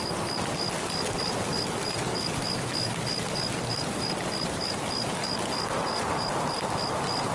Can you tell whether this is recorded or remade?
recorded